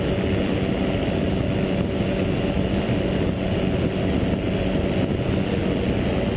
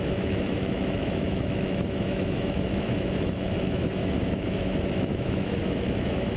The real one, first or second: first